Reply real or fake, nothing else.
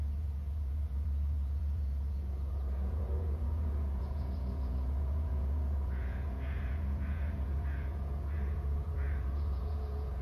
fake